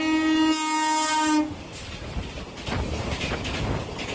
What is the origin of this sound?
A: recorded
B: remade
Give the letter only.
A